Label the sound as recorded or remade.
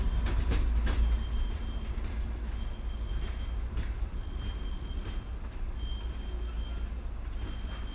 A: recorded